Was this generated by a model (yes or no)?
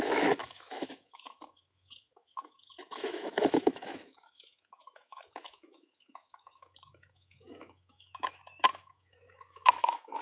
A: yes